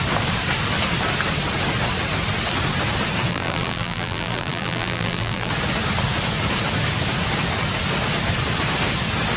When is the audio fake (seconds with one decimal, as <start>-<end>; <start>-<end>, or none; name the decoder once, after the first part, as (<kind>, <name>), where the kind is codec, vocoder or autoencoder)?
3.3-5.5 (vocoder, BigVGAN v2)